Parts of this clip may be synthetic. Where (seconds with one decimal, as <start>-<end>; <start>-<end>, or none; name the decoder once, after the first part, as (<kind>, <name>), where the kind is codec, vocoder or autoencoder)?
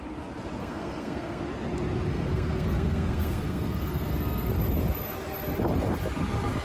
0.6-1.4 (codec, SNAC); 2.1-4.5